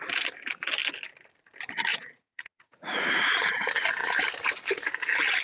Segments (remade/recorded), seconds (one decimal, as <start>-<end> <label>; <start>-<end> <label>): 0.0-1.9 recorded; 1.9-3.2 remade; 3.2-5.4 recorded